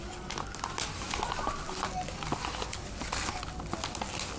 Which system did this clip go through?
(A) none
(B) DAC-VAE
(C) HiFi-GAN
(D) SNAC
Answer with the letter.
A